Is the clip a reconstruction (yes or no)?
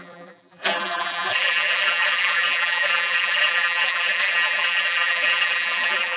yes